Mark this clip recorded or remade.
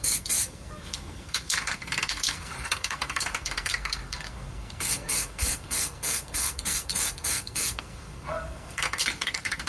remade